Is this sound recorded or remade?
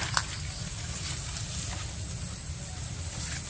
recorded